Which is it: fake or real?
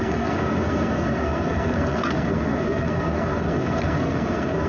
fake